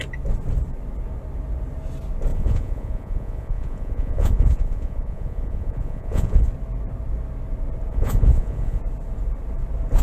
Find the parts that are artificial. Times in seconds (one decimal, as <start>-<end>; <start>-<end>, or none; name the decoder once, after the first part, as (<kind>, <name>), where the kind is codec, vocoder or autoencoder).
2.3-6.5 (vocoder, Vocos); 7.9-8.8

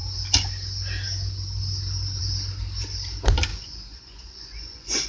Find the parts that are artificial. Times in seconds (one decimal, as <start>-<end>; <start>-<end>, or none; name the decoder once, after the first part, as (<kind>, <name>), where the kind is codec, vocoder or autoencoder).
3.5-5.1 (vocoder, Vocos)

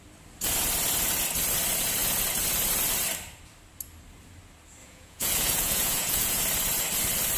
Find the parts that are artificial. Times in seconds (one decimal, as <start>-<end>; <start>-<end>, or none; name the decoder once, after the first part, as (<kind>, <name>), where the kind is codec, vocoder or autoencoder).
4.8-6.4 (vocoder, Vocos)

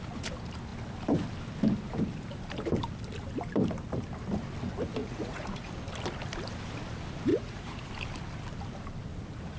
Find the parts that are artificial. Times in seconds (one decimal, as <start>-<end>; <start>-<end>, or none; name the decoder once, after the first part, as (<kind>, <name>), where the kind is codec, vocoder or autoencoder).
5.0-5.7 (vocoder, Vocos); 7.3-7.9

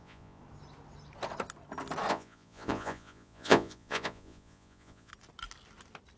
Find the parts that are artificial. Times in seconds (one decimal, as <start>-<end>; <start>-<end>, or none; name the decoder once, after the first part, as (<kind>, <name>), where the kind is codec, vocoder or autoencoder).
0.0-0.4 (vocoder, Vocos); 2.1-5.1

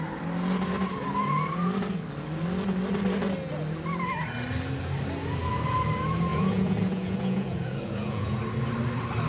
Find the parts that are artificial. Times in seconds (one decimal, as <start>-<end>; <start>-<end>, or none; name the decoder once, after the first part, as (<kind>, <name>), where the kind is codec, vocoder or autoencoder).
6.3-8.4 (vocoder, Vocos)

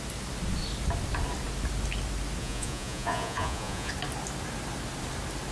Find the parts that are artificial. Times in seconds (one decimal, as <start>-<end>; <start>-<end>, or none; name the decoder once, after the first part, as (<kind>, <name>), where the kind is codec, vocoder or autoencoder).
2.4-3.9 (vocoder, Vocos)